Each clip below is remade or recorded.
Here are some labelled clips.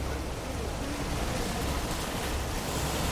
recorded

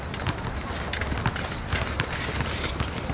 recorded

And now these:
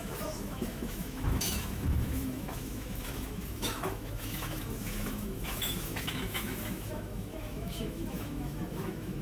remade